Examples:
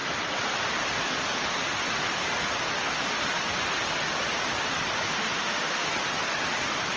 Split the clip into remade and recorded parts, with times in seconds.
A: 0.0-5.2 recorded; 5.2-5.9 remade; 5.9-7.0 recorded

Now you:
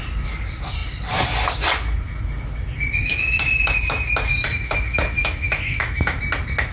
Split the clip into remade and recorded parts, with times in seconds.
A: 0.0-4.3 recorded; 4.3-6.2 remade; 6.2-6.7 recorded

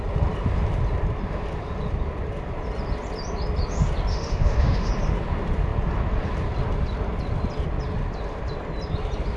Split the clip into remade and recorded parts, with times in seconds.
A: 0.0-4.1 recorded; 4.1-4.9 remade; 4.9-9.4 recorded

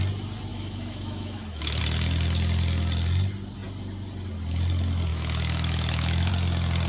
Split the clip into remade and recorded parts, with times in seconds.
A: 0.0-0.5 recorded; 0.5-1.8 remade; 1.8-5.1 recorded; 5.1-6.3 remade; 6.3-6.9 recorded